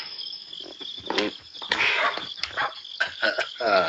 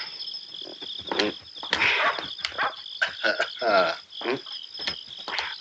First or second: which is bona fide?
second